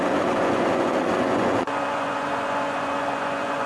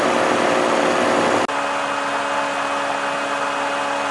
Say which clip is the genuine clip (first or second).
second